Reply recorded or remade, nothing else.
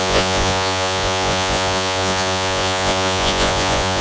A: remade